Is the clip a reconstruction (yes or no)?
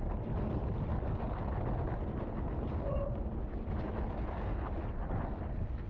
no